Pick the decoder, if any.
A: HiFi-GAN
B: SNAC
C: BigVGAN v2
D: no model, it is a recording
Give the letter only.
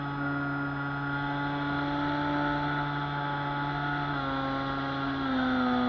D